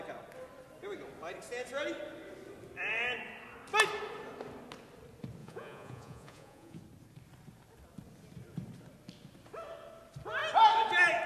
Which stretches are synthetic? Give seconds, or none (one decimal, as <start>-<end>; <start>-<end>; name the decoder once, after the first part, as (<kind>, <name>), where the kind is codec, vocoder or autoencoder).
5.4-6.8 (vocoder, Vocos)